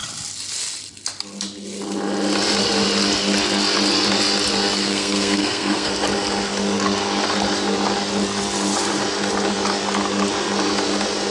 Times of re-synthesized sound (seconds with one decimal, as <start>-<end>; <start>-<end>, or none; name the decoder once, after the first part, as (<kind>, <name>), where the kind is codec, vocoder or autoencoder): 4.8-5.9 (codec, SNAC)